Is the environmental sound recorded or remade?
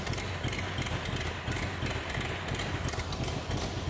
recorded